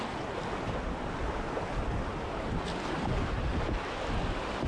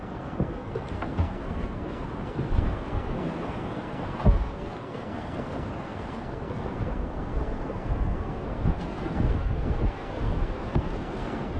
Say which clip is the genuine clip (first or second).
first